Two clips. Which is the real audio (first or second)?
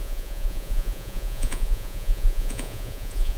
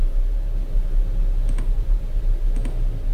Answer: second